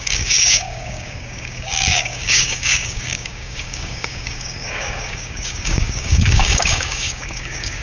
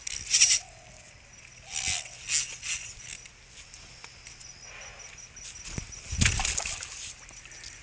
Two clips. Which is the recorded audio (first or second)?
second